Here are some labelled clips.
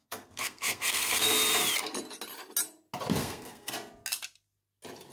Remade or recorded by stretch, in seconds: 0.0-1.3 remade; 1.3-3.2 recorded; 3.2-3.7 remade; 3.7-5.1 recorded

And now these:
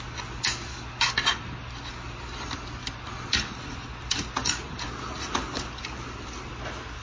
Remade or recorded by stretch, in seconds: 0.0-2.8 recorded; 2.8-4.3 remade; 4.3-7.0 recorded

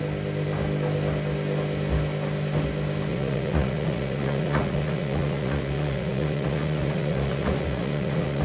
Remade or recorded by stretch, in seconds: 0.0-3.1 recorded; 3.1-8.4 remade

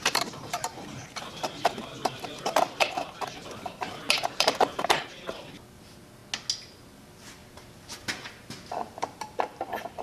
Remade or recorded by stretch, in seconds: 0.0-4.7 remade; 4.7-5.8 recorded; 5.8-6.2 remade; 6.2-6.7 recorded; 6.7-7.4 remade; 7.4-8.3 recorded; 8.3-10.0 remade

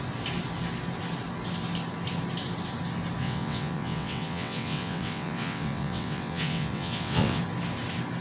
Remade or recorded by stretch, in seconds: 0.0-3.2 recorded; 3.2-7.4 remade; 7.4-8.2 recorded

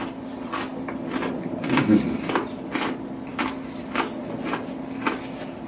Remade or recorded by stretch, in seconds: 0.0-5.7 recorded

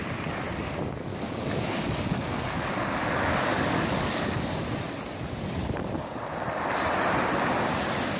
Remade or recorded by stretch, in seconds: 0.0-1.1 recorded; 1.1-4.6 remade; 4.6-8.2 recorded